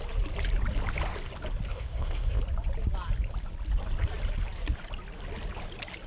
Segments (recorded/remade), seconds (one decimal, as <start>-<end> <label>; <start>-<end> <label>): 0.0-1.7 recorded; 1.7-2.4 remade; 2.4-6.1 recorded